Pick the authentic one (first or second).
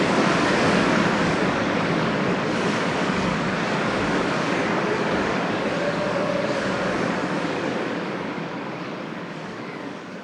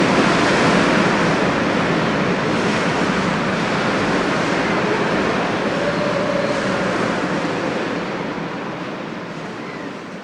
second